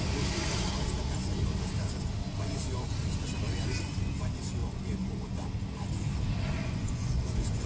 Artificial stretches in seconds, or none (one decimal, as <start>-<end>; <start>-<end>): 4.6-5.4; 6.6-7.7